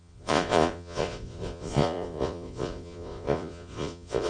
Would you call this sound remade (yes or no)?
yes